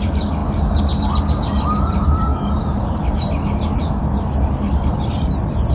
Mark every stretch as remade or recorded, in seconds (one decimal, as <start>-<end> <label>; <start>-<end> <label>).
0.0-0.4 remade; 0.4-1.9 recorded; 1.9-2.3 remade; 2.3-3.8 recorded; 3.8-5.7 remade